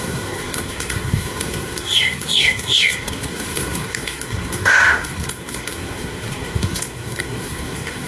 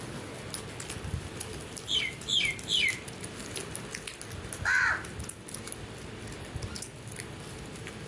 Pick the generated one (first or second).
first